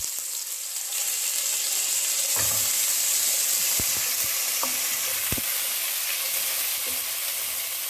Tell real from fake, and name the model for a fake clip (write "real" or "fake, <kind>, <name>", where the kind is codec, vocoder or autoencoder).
real